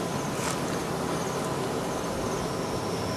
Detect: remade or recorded recorded